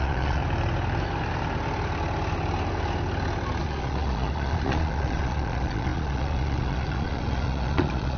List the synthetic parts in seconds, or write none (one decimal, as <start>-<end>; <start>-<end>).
0.0-0.4; 3.6-8.2